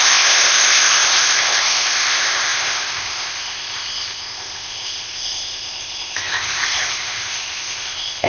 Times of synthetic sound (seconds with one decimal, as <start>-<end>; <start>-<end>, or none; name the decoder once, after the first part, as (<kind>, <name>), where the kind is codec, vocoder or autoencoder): 0.0-8.3 (codec, ZipCodec)